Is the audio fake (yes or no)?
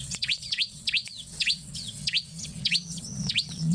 yes